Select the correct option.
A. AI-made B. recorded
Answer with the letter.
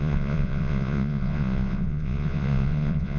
A